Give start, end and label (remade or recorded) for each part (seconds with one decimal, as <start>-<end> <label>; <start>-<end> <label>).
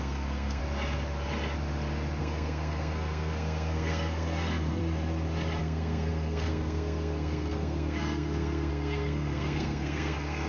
0.0-0.6 remade; 0.6-2.2 recorded; 2.2-4.8 remade; 4.8-5.6 recorded; 5.6-10.5 remade